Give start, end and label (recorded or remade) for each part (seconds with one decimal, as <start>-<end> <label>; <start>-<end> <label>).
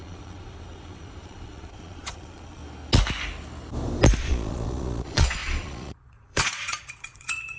0.0-2.6 remade; 2.6-4.2 recorded; 4.2-7.6 remade